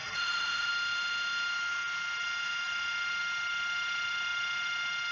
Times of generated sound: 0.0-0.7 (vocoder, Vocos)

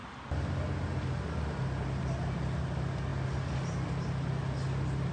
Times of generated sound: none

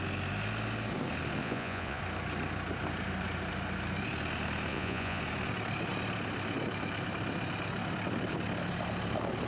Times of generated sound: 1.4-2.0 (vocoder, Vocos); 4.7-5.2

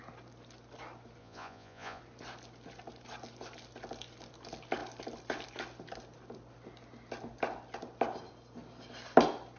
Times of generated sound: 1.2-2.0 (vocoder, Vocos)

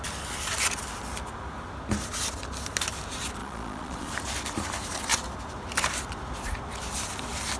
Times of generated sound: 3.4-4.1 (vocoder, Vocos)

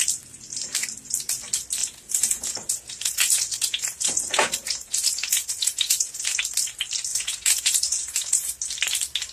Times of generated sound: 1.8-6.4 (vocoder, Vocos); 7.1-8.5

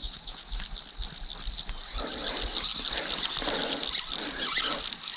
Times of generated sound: 0.0-0.6 (vocoder, Vocos)